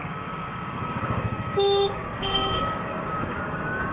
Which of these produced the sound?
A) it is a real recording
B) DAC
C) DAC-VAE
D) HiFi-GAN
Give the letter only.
B